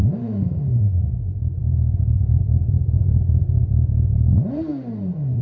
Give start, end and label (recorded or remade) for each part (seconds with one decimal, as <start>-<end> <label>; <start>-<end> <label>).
0.0-1.2 remade; 1.2-1.6 recorded; 1.6-2.4 remade; 2.4-5.4 recorded